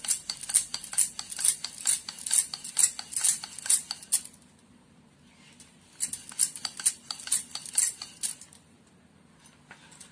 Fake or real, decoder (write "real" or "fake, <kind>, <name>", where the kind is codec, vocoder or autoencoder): real